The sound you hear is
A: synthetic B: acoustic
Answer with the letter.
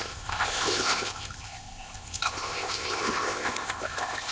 A